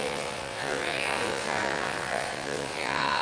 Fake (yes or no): yes